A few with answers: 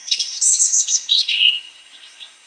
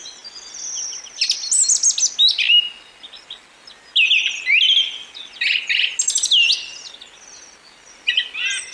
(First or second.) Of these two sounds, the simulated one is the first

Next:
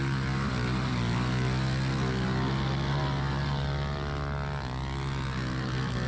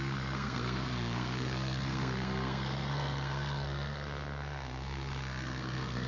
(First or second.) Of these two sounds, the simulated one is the second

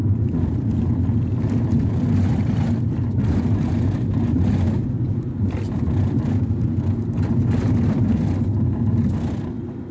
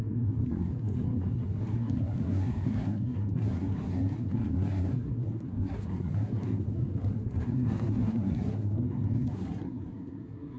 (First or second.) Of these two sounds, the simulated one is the second